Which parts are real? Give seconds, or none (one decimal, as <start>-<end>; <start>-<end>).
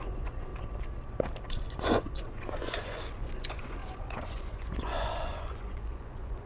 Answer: 0.5-1.5